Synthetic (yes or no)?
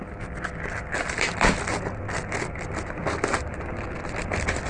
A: no